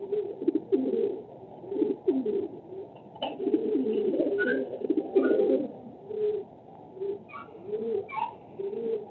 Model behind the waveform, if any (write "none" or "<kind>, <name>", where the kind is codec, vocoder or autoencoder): none